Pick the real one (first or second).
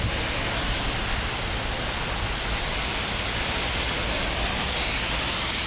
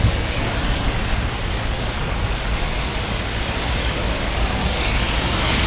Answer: first